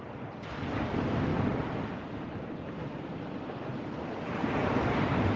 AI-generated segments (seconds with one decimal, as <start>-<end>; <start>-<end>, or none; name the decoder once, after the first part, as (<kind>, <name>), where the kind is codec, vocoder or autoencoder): 1.3-2.7 (vocoder, BigVGAN v2); 4.6-5.4